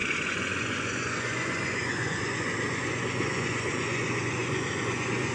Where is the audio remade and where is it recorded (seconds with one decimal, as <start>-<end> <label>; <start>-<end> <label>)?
0.0-5.3 remade